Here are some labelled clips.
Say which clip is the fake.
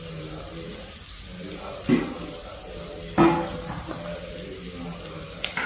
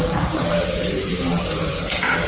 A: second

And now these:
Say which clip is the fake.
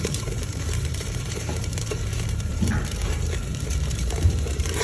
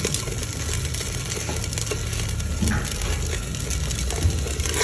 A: first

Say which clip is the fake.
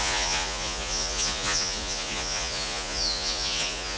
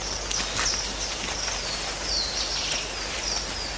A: first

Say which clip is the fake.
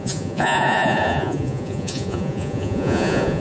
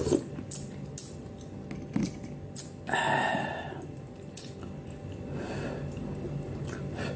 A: first